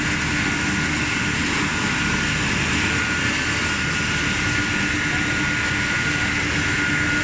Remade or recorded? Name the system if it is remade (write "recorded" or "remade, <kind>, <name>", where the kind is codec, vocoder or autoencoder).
recorded